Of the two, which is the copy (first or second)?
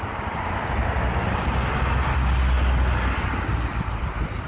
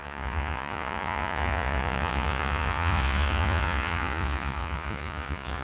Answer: second